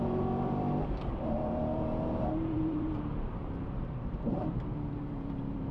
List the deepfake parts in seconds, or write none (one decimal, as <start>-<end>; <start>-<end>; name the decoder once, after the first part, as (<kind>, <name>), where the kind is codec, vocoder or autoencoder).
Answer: 0.0-5.7 (vocoder, BigVGAN v2)